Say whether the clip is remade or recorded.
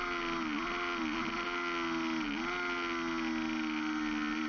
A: recorded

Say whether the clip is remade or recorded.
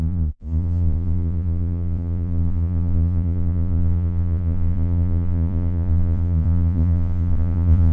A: remade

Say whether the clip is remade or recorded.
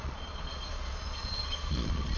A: remade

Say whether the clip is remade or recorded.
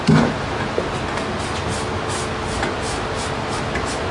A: recorded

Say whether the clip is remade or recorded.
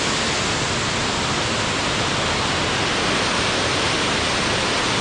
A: recorded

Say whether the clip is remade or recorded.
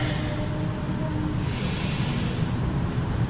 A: recorded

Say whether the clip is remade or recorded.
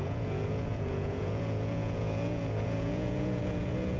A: remade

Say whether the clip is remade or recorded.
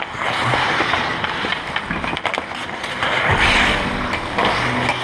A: recorded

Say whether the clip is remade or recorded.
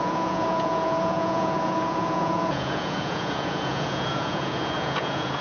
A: remade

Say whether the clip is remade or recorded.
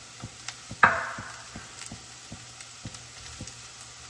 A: recorded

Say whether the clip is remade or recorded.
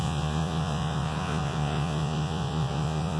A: remade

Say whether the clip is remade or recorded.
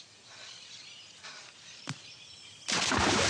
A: recorded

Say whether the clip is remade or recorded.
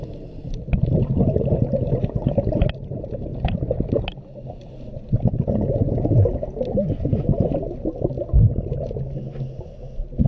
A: recorded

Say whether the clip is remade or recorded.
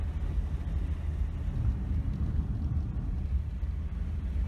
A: recorded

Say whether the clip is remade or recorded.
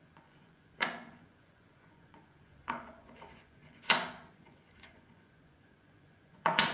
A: remade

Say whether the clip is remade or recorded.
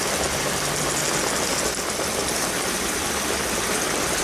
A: recorded